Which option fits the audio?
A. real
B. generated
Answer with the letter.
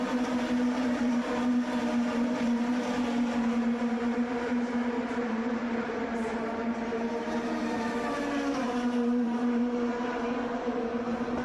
B